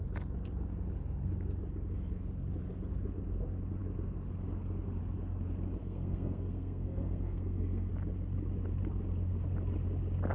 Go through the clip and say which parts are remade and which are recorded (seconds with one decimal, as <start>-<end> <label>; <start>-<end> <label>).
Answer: 0.0-5.8 recorded; 5.8-7.9 remade; 7.9-10.3 recorded